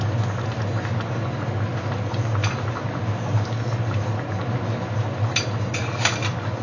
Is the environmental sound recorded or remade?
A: recorded